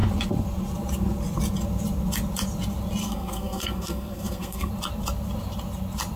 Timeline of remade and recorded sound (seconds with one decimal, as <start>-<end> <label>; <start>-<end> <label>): 0.0-3.0 recorded; 3.0-4.7 remade; 4.7-6.2 recorded